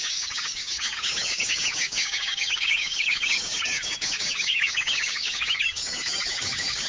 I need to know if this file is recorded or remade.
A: remade